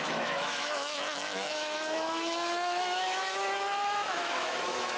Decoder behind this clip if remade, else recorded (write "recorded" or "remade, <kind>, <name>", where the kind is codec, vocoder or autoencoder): remade, autoencoder, DAC-VAE